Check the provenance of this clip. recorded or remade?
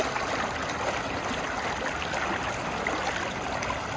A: recorded